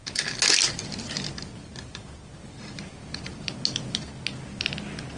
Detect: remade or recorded recorded